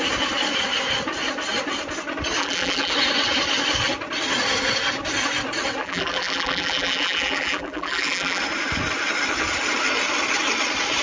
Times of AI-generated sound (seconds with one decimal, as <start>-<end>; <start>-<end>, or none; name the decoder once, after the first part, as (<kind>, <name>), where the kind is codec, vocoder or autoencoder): 2.4-2.9 (vocoder, BigVGAN v2); 5.8-8.4